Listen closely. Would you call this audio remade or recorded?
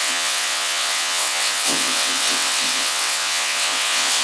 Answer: remade